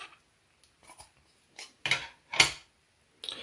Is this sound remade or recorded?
recorded